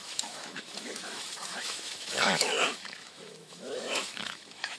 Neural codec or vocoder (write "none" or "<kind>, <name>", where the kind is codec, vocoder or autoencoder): autoencoder, DAC-VAE